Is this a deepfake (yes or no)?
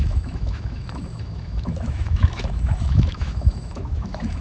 yes